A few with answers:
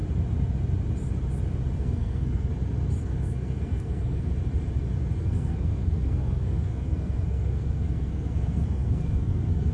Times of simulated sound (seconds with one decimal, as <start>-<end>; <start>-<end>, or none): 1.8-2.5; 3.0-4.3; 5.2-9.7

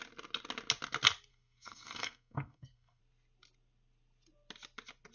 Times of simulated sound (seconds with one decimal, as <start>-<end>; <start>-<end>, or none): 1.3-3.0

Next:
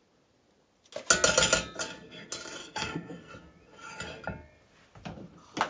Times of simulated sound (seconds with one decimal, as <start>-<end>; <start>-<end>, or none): 2.6-3.3

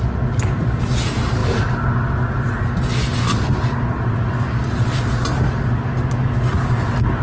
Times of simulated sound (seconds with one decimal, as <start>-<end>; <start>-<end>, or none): none

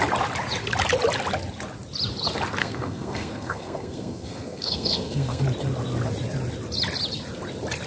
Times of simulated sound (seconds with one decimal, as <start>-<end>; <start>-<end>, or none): 2.6-5.4